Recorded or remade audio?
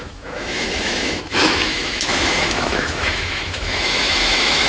remade